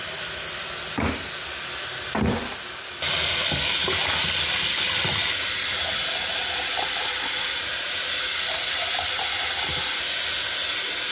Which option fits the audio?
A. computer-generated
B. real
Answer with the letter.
B